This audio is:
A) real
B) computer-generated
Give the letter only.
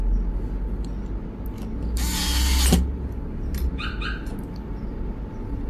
A